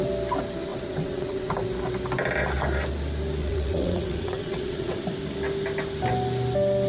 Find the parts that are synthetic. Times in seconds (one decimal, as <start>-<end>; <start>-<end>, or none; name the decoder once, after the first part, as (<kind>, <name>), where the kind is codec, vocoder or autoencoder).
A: 0.7-1.5 (vocoder, WaveNeXt); 3.4-5.0